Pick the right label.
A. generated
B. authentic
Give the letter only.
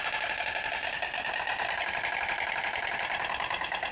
B